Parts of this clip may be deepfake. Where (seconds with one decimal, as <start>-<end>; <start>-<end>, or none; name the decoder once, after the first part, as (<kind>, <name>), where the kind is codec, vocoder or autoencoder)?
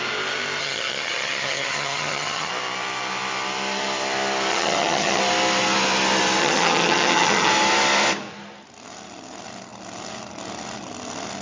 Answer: 0.6-2.5 (vocoder, HiFi-GAN); 4.5-5.2; 6.4-7.5